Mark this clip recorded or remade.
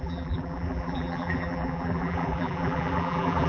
remade